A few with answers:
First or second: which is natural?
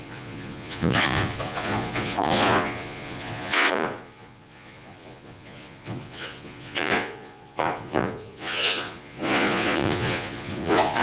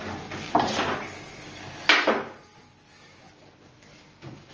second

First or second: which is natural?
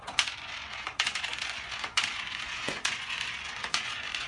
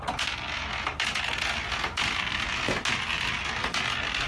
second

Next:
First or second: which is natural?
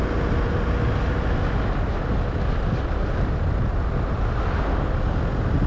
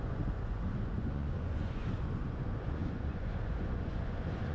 first